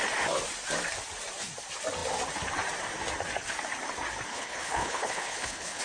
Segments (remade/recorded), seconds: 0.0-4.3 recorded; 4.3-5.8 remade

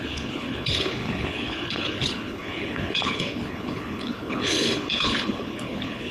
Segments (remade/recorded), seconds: 0.0-6.1 remade